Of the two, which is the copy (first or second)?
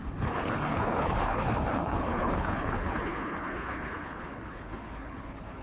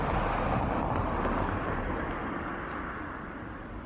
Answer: first